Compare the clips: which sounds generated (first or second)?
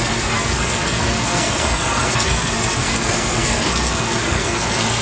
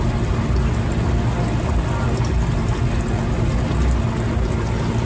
first